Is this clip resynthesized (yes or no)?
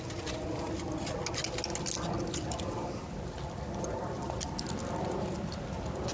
no